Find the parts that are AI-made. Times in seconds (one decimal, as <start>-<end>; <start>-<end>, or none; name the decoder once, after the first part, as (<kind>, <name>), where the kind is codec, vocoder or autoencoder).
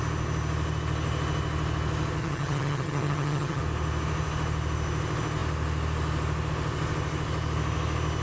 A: 2.2-3.6 (vocoder, HiFi-GAN)